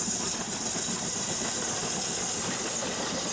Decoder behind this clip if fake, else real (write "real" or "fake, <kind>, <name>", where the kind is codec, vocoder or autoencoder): real